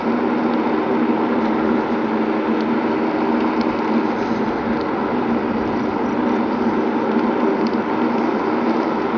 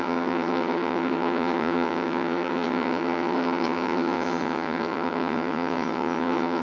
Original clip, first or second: first